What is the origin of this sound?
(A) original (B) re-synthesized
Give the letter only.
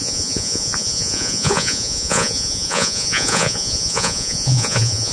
B